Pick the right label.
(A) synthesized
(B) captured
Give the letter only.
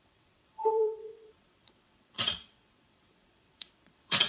A